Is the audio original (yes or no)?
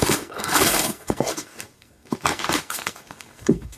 no